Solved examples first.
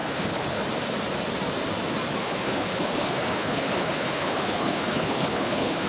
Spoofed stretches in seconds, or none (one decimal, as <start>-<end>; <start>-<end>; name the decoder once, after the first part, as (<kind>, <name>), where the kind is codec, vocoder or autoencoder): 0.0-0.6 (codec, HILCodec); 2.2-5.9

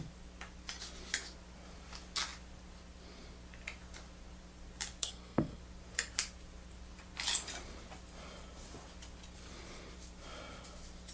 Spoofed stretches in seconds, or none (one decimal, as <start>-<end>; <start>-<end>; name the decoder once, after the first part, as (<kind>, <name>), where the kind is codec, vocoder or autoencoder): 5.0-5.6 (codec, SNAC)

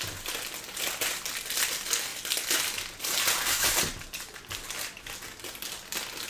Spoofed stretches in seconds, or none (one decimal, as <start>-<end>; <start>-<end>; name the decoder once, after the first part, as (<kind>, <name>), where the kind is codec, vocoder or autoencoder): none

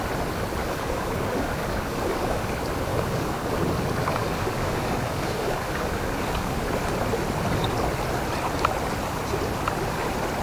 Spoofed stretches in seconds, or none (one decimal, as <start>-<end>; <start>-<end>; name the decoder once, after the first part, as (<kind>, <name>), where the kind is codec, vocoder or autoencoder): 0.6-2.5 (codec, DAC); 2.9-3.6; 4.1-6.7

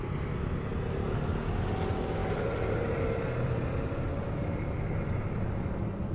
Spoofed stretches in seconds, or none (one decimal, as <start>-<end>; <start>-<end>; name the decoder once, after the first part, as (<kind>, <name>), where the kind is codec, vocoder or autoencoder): 2.2-4.8 (vocoder, BigVGAN v2)

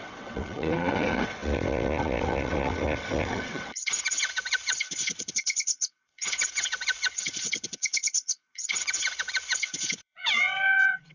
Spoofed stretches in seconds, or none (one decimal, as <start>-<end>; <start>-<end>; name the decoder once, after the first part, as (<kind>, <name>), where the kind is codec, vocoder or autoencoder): 0.0-11.1 (vocoder, WaveNeXt)

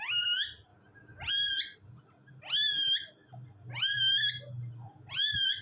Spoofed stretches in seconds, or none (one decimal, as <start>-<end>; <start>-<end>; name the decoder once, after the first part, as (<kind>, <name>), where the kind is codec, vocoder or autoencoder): none

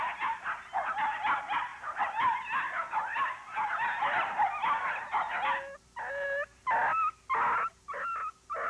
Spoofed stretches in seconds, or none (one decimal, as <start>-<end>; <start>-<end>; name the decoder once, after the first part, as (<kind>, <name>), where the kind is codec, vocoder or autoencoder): none